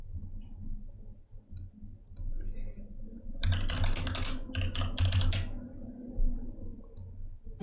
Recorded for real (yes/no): yes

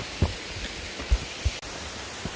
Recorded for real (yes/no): yes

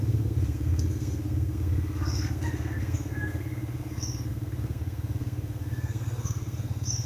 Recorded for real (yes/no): no